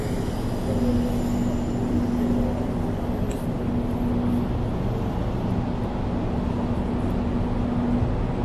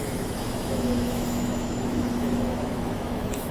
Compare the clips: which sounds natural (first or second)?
first